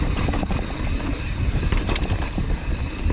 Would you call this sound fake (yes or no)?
yes